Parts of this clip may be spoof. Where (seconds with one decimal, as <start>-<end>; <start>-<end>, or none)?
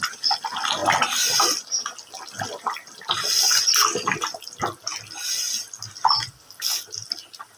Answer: 0.0-0.8; 1.8-7.6